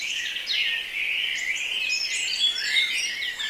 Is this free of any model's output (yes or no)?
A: yes